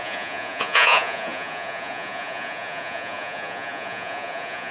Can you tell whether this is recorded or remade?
remade